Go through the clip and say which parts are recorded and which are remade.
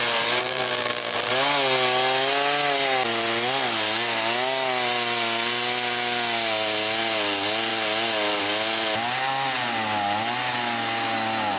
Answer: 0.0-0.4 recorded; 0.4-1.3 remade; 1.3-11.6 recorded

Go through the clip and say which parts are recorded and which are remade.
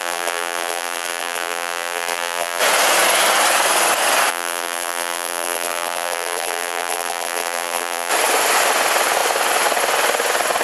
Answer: 0.0-2.6 remade; 2.6-4.3 recorded; 4.3-8.1 remade; 8.1-10.6 recorded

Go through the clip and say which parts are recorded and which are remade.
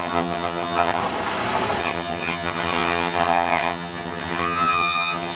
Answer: 0.0-1.0 remade; 1.0-1.8 recorded; 1.8-5.4 remade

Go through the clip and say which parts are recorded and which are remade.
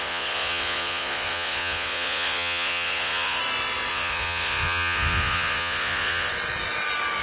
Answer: 0.0-3.4 remade; 3.4-3.9 recorded; 3.9-6.3 remade; 6.3-7.2 recorded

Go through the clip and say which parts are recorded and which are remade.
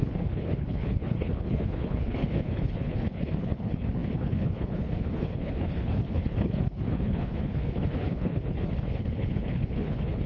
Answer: 0.0-10.3 remade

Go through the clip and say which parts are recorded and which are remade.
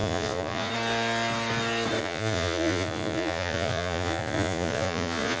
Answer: 0.0-0.7 remade; 0.7-2.0 recorded; 2.0-5.4 remade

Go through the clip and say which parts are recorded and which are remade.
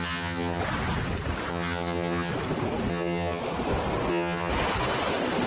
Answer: 0.0-0.6 remade; 0.6-1.5 recorded; 1.5-2.3 remade; 2.3-2.9 recorded; 2.9-3.4 remade; 3.4-4.1 recorded; 4.1-4.5 remade; 4.5-5.5 recorded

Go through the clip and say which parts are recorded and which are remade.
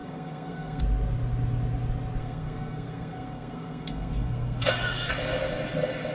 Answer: 0.0-0.8 remade; 0.8-2.2 recorded; 2.2-5.1 remade; 5.1-6.1 recorded